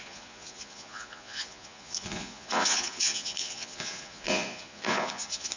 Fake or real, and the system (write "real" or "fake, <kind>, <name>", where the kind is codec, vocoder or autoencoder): fake, vocoder, Vocos